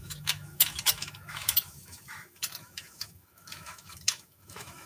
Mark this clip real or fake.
fake